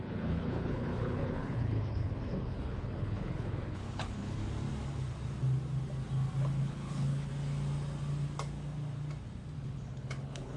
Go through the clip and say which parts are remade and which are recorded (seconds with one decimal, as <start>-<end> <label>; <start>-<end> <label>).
0.0-4.4 remade; 4.4-6.6 recorded; 6.6-7.3 remade; 7.3-9.6 recorded; 9.6-10.6 remade